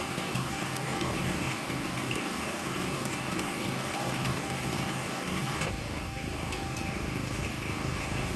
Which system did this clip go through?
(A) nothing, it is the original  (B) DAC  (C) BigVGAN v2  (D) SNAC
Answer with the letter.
B